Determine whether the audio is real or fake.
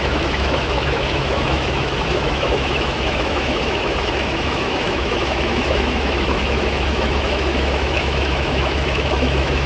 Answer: fake